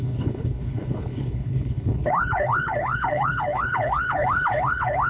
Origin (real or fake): fake